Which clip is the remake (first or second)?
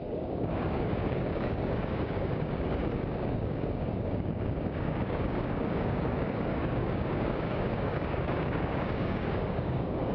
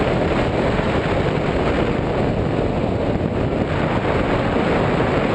first